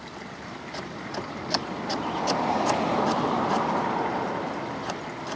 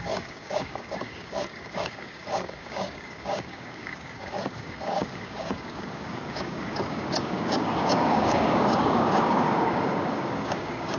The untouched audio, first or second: first